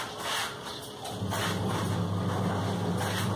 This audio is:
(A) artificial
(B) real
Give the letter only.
B